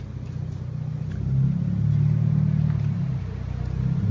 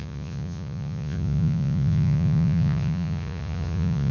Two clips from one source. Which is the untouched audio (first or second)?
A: first